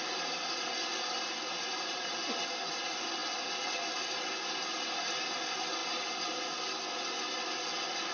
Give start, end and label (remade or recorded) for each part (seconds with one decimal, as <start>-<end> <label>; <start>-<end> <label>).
0.0-8.1 recorded